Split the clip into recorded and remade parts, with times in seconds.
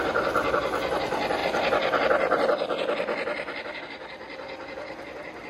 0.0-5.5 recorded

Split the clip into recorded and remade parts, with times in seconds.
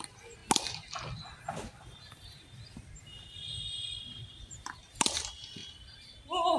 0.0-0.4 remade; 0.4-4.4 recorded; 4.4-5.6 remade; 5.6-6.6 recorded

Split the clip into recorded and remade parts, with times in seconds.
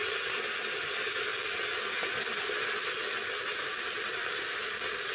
0.0-5.1 recorded